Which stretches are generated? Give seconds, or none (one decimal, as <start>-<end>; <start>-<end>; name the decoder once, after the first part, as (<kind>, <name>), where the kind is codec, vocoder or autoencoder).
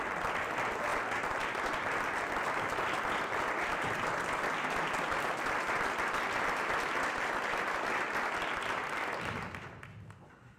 none